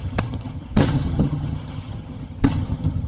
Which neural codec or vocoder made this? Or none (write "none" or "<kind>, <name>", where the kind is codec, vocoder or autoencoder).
vocoder, HiFi-GAN